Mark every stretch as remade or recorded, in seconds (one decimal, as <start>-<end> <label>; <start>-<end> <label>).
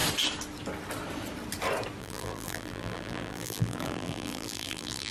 0.0-2.0 recorded; 2.0-5.1 remade